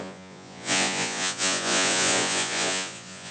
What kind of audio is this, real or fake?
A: fake